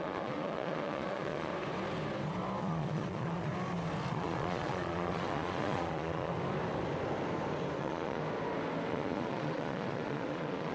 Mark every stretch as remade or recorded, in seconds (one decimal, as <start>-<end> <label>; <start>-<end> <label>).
0.0-1.5 remade; 1.5-2.6 recorded; 2.6-3.5 remade; 3.5-4.1 recorded; 4.1-6.3 remade; 6.3-7.8 recorded; 7.8-8.2 remade; 8.2-8.9 recorded; 8.9-10.7 remade